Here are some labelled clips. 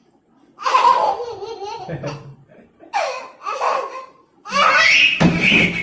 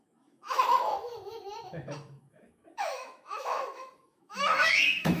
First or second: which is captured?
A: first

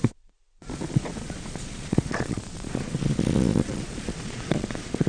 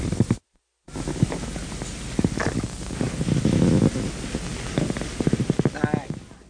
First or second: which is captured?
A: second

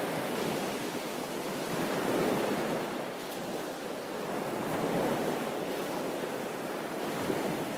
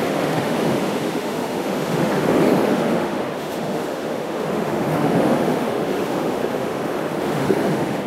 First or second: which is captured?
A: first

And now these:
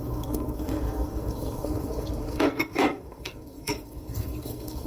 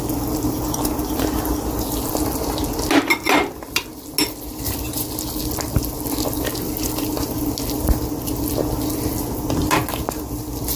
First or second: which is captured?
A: second